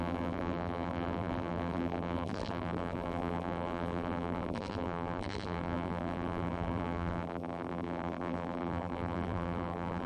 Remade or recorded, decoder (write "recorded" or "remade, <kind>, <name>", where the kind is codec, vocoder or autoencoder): remade, vocoder, BigVGAN v2